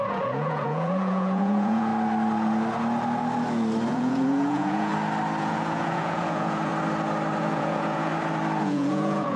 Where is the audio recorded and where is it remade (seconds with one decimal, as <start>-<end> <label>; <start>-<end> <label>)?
0.0-1.9 remade; 1.9-3.9 recorded; 3.9-4.9 remade; 4.9-5.4 recorded; 5.4-6.7 remade; 6.7-7.4 recorded; 7.4-8.1 remade; 8.1-8.6 recorded; 8.6-9.4 remade